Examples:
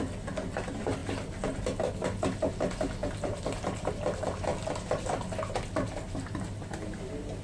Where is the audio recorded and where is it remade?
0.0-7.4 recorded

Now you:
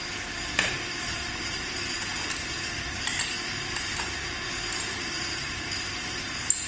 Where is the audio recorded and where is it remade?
0.0-6.7 recorded

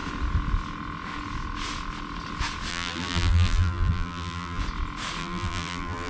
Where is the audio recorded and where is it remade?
0.0-2.7 recorded; 2.7-4.6 remade; 4.6-5.2 recorded; 5.2-6.1 remade